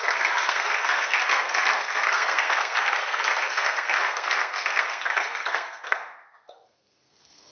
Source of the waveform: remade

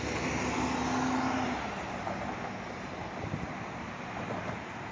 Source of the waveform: recorded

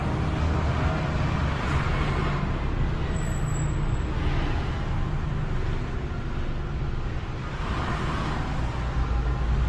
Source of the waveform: recorded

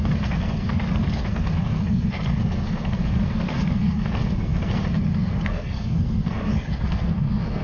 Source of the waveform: remade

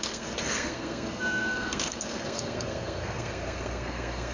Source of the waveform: remade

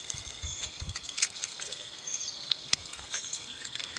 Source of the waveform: remade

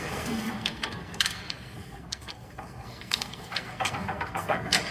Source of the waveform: remade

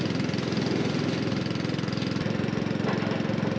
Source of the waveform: recorded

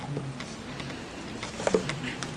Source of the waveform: recorded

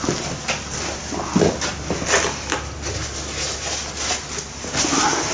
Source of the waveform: recorded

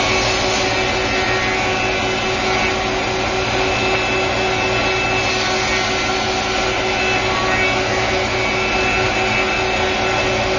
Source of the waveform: recorded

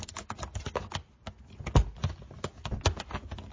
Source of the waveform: recorded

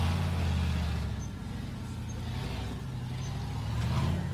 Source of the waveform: recorded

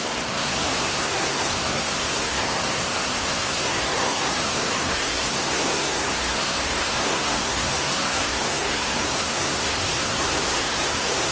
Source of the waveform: remade